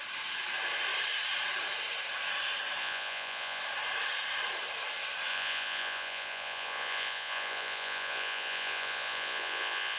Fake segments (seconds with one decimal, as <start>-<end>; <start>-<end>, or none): 2.8-3.6; 5.3-10.0